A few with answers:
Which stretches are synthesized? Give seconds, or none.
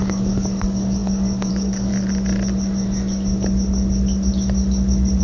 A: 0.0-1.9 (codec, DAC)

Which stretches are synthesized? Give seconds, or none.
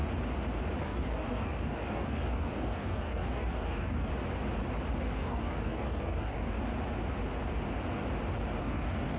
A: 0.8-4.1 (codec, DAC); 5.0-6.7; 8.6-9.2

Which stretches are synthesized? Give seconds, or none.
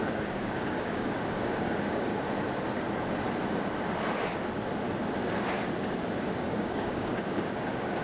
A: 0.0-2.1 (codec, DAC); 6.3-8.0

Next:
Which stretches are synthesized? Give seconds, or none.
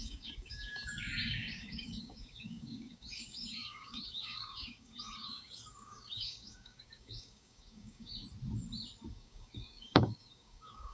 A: 0.0-8.2 (codec, DAC); 9.1-10.9